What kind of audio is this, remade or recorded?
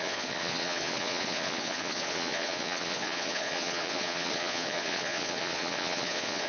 remade